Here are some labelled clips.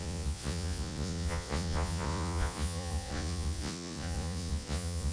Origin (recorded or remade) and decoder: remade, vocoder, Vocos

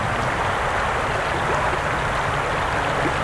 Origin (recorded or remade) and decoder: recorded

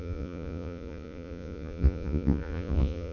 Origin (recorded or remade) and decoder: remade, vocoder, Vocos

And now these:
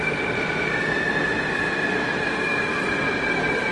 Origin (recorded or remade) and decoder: recorded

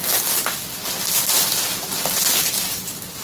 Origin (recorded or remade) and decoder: recorded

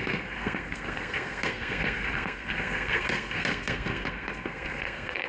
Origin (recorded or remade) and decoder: remade, codec, SNAC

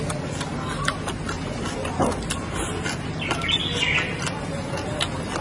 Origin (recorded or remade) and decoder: recorded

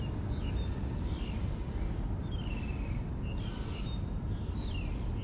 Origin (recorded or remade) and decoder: recorded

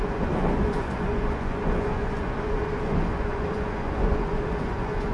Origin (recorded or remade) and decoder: remade, vocoder, Vocos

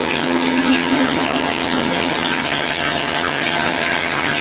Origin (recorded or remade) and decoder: remade, vocoder, HiFi-GAN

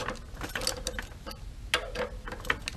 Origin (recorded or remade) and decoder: recorded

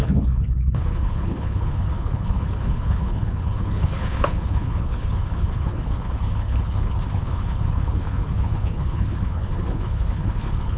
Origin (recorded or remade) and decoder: remade, codec, HILCodec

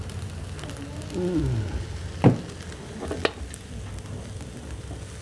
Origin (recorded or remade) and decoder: recorded